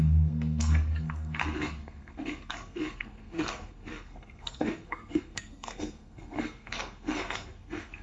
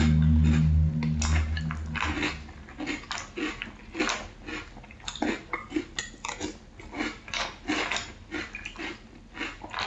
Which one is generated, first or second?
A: first